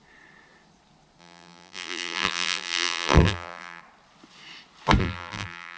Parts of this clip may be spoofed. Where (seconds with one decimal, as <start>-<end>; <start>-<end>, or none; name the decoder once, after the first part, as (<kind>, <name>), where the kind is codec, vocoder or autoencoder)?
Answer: 1.2-3.8 (vocoder, BigVGAN v2); 5.0-5.8

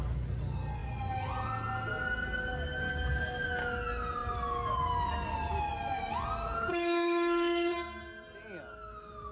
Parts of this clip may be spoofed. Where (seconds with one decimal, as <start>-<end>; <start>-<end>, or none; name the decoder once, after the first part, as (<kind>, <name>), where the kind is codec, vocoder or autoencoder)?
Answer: 6.7-7.7 (codec, SNAC)

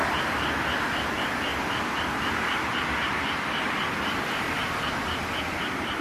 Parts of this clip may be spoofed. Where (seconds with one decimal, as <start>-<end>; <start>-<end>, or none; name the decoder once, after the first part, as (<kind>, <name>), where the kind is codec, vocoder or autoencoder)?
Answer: none

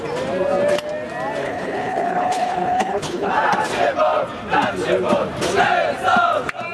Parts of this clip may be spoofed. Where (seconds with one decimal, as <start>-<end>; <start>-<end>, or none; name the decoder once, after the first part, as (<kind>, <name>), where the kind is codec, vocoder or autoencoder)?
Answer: 1.4-3.3 (codec, HILCodec)

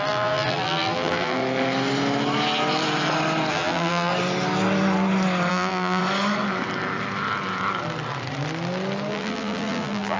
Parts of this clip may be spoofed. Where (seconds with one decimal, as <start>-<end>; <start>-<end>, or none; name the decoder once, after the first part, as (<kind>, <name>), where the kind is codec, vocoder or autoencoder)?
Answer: 0.0-1.4 (vocoder, BigVGAN v2); 3.5-4.1; 5.5-6.0; 9.1-10.2